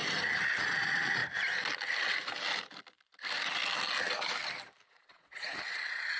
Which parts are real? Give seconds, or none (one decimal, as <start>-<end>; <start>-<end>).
0.0-0.6; 1.2-4.9

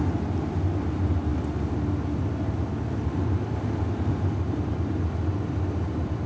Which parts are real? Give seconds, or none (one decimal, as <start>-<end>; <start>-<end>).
0.0-6.3

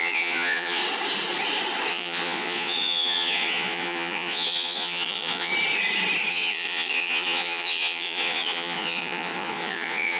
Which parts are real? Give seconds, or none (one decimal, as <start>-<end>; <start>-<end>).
0.8-1.9; 5.5-6.3

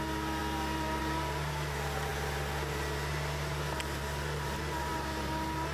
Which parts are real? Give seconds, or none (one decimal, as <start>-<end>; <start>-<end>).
0.0-5.7

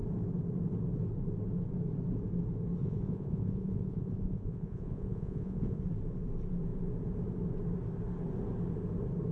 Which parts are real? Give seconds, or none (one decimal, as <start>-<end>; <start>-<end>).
0.0-2.8; 5.8-9.3